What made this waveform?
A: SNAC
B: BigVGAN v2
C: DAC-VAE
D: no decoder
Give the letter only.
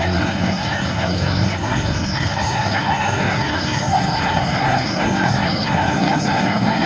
A